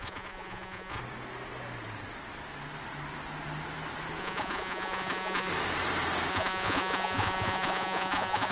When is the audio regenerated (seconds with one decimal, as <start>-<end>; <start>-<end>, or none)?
0.0-1.0; 4.2-5.5; 6.3-8.5